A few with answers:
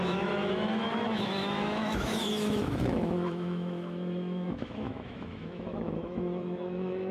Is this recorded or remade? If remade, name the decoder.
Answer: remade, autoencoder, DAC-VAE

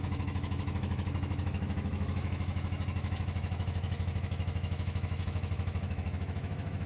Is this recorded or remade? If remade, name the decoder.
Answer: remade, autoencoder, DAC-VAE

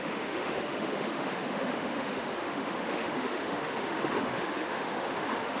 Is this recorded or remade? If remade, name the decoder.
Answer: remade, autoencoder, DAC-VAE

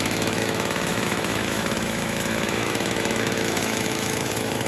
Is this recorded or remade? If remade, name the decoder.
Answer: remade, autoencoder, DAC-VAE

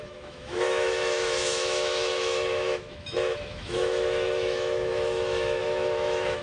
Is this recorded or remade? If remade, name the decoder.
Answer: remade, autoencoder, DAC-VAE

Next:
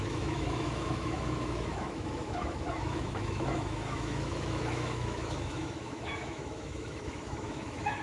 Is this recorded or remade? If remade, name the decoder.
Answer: remade, autoencoder, DAC-VAE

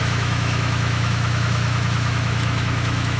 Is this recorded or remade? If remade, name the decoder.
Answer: remade, autoencoder, DAC-VAE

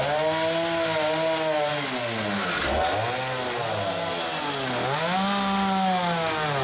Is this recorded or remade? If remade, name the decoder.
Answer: recorded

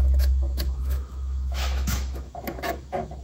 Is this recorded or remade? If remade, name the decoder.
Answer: remade, autoencoder, DAC-VAE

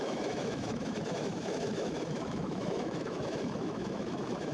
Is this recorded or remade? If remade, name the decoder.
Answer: remade, autoencoder, DAC-VAE